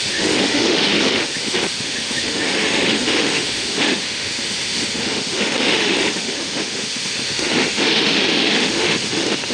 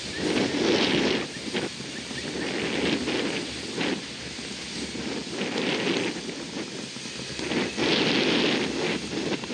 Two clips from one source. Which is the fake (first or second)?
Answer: first